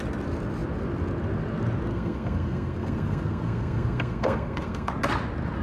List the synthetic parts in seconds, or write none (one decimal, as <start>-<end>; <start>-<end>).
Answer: 1.9-4.9